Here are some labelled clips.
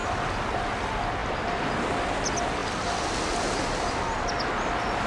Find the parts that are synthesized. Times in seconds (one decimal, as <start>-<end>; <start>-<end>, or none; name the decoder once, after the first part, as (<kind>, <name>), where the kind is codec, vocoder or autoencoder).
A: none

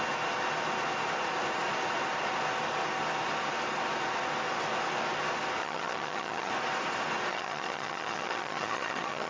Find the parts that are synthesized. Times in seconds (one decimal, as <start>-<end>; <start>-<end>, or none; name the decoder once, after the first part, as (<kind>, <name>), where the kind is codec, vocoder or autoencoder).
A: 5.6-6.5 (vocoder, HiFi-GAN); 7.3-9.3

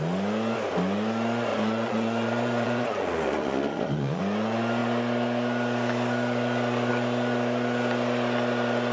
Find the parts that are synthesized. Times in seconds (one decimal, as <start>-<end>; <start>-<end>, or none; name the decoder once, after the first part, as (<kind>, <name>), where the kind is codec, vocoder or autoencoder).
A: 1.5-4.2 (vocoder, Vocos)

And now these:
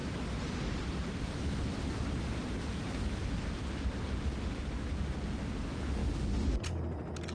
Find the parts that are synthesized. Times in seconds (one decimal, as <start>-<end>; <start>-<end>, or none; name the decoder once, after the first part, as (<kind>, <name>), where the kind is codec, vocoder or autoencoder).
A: 4.4-6.0 (vocoder, BigVGAN v2); 6.7-7.3

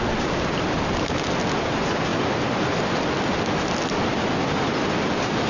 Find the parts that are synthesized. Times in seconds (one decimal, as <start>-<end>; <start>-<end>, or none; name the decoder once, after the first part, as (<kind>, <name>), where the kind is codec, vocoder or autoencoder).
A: none